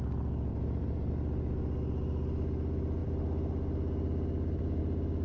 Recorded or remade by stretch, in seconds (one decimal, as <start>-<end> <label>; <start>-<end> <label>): 0.0-0.5 recorded; 0.5-1.1 remade; 1.1-5.2 recorded